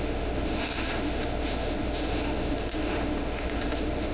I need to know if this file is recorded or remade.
remade